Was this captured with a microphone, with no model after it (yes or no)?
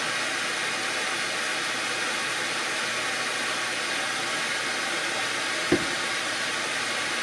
yes